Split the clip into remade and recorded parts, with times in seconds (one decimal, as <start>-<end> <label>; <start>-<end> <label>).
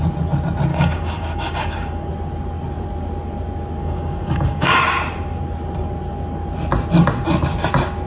0.0-0.7 recorded; 0.7-2.1 remade; 2.1-3.8 recorded; 3.8-4.8 remade; 4.8-8.1 recorded